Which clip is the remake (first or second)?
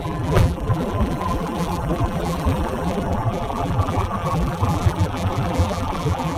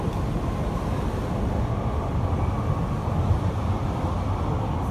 first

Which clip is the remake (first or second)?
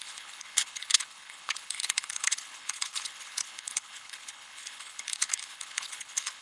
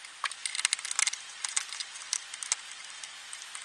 first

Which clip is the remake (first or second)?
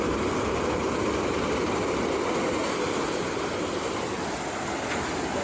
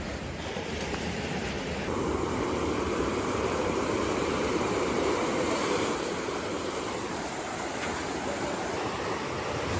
second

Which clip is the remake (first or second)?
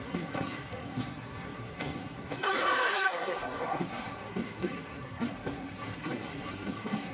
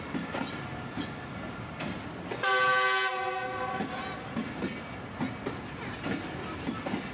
first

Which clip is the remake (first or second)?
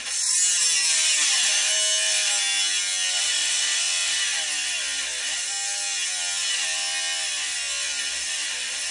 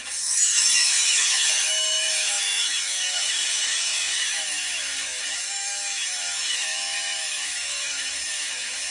second